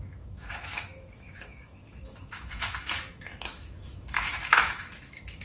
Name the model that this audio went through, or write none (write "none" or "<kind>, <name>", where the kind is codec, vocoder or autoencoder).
autoencoder, DAC-VAE